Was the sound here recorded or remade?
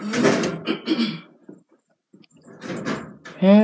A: recorded